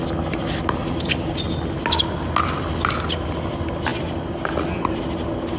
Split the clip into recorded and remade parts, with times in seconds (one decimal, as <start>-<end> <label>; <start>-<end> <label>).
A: 0.0-5.6 recorded